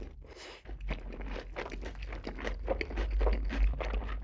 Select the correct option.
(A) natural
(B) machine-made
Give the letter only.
A